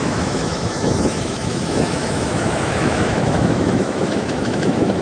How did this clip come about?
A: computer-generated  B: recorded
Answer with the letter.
A